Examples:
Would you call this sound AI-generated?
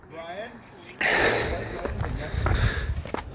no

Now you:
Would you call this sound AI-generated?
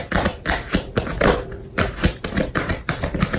yes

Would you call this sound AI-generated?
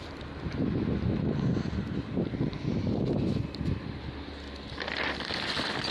no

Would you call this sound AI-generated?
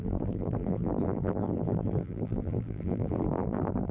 yes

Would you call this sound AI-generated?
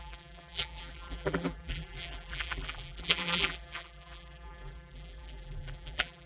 yes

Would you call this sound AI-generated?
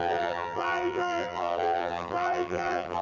yes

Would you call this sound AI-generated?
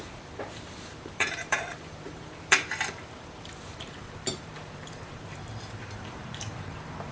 yes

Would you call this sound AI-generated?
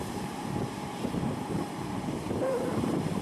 yes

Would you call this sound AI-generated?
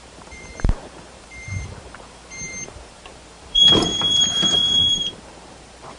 yes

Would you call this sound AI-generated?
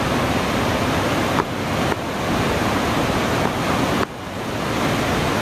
no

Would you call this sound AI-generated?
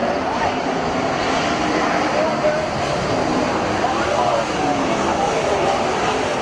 yes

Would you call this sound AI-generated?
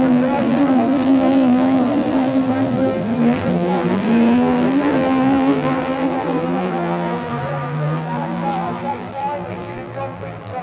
yes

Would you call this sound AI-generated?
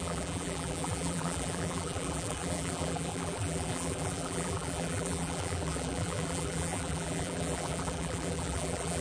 yes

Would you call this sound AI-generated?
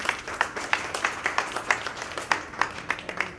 yes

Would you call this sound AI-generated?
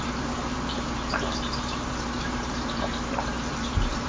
yes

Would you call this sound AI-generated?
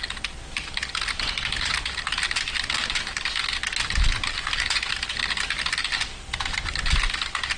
no